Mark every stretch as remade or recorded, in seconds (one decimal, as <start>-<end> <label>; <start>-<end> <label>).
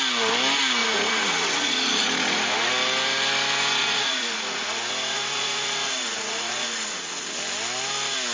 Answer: 0.0-0.8 recorded; 0.8-2.7 remade; 2.7-3.8 recorded; 3.8-7.3 remade; 7.3-8.3 recorded